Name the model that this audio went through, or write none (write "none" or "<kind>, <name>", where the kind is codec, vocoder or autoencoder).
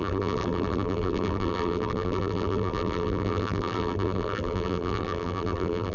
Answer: vocoder, BigVGAN v2